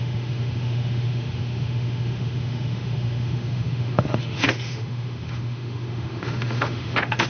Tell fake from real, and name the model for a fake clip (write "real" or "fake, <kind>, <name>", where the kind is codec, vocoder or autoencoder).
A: fake, autoencoder, DAC-VAE